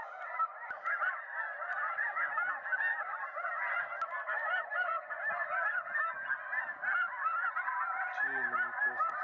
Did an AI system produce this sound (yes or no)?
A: no